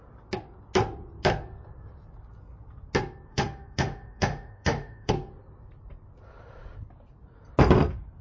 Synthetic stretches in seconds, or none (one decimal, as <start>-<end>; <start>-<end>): 3.3-5.1